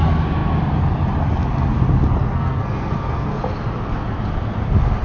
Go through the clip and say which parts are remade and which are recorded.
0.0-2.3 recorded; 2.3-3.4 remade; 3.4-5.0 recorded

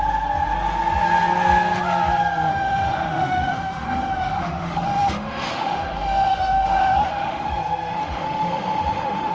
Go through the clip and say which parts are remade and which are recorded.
0.0-2.5 recorded; 2.5-7.5 remade; 7.5-8.0 recorded; 8.0-9.3 remade

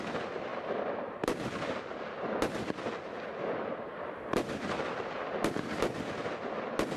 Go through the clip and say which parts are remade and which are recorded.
0.0-7.0 recorded

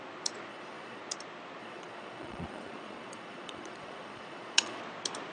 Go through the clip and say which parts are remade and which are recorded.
0.0-0.5 recorded; 0.5-1.0 remade; 1.0-1.6 recorded; 1.6-4.8 remade; 4.8-5.3 recorded